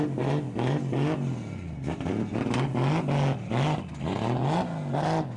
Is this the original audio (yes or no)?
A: yes